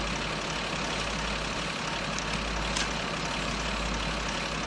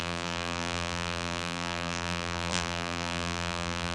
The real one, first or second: first